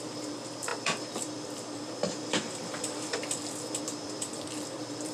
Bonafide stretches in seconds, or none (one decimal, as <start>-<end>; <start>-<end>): none